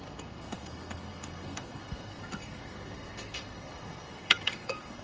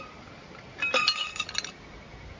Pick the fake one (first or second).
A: first